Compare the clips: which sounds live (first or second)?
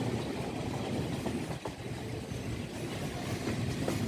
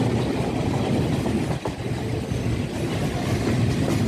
second